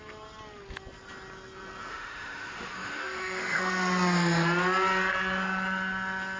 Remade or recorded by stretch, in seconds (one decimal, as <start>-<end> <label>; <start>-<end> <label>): 0.0-1.9 recorded; 1.9-3.6 remade; 3.6-6.4 recorded